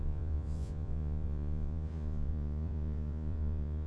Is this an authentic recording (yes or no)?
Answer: no